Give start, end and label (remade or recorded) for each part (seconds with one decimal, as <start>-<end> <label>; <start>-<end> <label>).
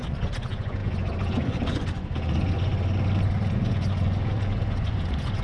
0.0-2.7 remade; 2.7-3.3 recorded; 3.3-5.4 remade